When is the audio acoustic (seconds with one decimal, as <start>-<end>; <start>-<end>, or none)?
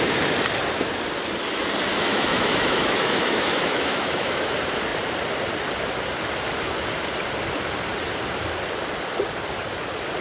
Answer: 0.0-1.9; 4.5-10.2